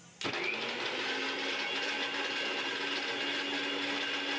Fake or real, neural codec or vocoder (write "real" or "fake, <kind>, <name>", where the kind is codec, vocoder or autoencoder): real